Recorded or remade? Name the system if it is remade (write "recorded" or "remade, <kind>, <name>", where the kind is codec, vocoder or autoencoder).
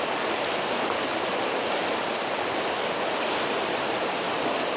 recorded